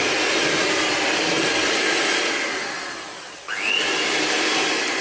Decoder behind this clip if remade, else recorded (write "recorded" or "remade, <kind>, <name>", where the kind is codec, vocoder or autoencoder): recorded